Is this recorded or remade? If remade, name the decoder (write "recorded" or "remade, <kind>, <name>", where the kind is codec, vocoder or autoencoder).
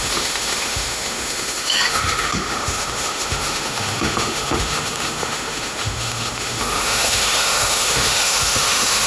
remade, autoencoder, DAC-VAE